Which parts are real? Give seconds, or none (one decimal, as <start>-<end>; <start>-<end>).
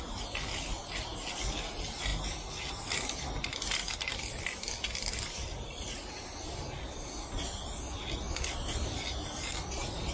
0.0-10.1